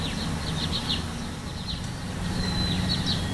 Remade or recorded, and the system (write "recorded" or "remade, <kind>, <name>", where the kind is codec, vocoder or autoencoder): recorded